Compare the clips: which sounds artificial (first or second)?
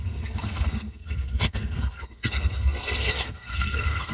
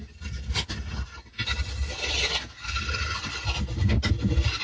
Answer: first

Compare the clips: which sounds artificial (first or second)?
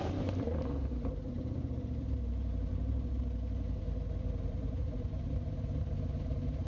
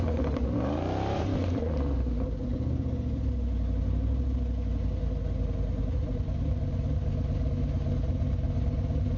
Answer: first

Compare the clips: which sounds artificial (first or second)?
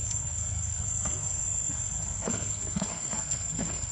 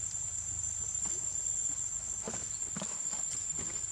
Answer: first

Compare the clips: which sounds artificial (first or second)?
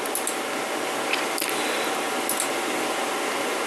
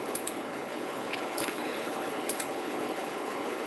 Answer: second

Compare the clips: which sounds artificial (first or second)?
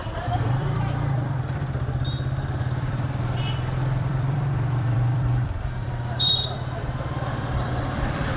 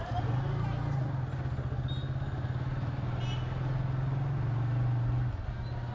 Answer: first